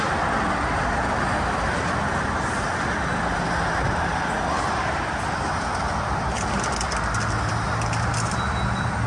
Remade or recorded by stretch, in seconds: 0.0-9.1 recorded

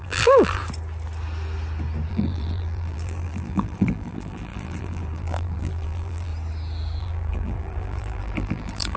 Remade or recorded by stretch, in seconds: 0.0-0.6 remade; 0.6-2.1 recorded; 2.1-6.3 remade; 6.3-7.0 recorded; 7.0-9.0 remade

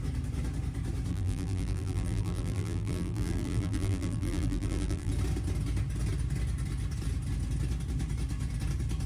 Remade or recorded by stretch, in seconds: 0.0-1.1 recorded; 1.1-5.1 remade; 5.1-9.1 recorded

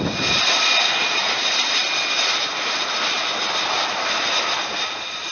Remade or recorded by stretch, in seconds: 0.0-1.8 remade; 1.8-5.3 recorded

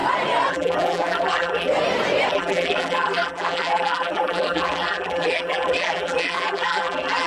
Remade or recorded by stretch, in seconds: 0.0-0.5 recorded; 0.5-1.7 remade; 1.7-2.3 recorded; 2.3-7.3 remade

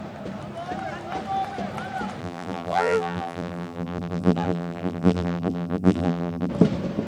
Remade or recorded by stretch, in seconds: 0.0-2.2 recorded; 2.2-6.5 remade; 6.5-7.1 recorded

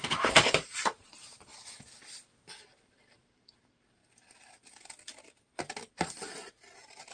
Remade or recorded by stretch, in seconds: 0.0-1.5 remade; 1.5-2.5 recorded; 2.5-4.0 remade; 4.0-7.1 recorded

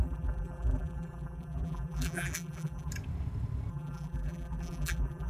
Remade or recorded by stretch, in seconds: 0.0-2.9 remade; 2.9-3.7 recorded; 3.7-5.3 remade